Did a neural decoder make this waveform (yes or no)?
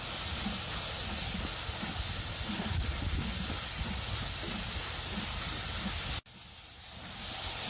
no